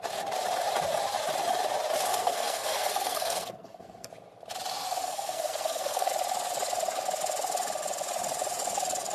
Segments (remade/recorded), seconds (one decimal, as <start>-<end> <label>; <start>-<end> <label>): 0.0-2.1 recorded; 2.1-4.1 remade; 4.1-5.0 recorded; 5.0-6.1 remade; 6.1-9.1 recorded

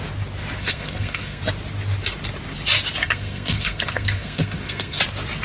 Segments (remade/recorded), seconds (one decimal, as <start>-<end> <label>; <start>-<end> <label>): 0.0-0.6 recorded; 0.6-1.4 remade; 1.4-3.0 recorded; 3.0-5.0 remade; 5.0-5.4 recorded

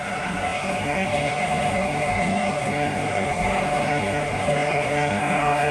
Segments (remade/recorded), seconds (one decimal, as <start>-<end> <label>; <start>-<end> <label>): 0.0-5.7 remade

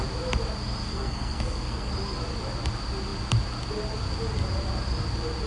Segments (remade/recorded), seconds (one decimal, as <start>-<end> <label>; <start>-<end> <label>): 0.0-0.9 recorded; 0.9-1.9 remade; 1.9-5.5 recorded

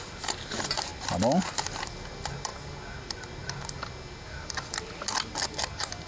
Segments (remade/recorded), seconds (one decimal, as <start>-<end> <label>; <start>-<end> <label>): 0.0-6.1 recorded

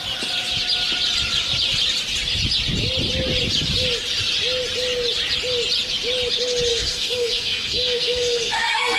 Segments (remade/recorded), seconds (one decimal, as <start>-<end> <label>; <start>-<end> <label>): 0.0-6.7 recorded; 6.7-9.0 remade

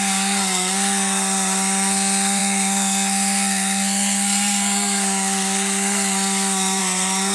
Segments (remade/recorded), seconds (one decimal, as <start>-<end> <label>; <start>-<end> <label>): 0.0-7.3 remade